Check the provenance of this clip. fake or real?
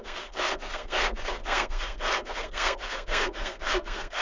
fake